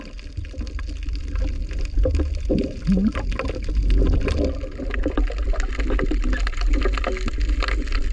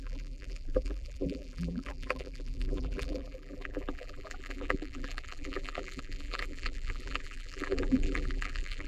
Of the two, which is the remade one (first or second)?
second